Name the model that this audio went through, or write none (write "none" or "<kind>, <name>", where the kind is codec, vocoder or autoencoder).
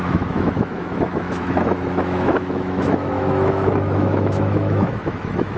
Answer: autoencoder, DAC-VAE